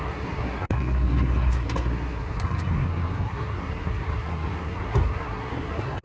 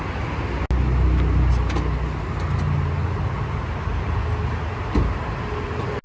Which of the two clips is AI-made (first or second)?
first